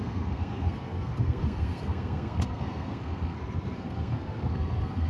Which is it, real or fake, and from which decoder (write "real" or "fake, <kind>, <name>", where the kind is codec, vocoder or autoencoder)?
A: fake, codec, SNAC